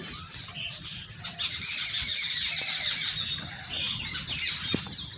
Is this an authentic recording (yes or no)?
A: yes